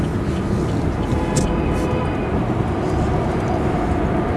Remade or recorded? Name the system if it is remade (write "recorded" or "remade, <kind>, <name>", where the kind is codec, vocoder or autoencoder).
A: recorded